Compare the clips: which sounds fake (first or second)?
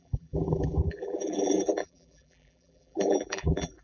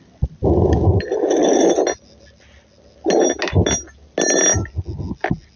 first